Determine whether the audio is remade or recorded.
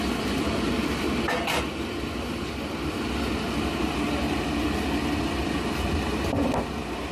recorded